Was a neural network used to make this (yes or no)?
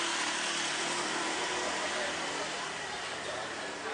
no